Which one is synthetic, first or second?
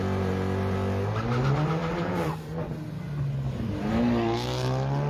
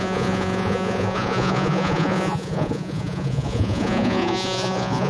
second